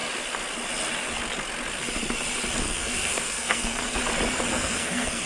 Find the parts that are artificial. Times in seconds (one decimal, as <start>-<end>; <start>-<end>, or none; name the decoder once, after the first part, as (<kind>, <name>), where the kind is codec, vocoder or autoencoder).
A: 2.6-4.0 (codec, SNAC); 4.5-5.3